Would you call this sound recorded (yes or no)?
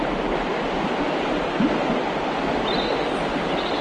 yes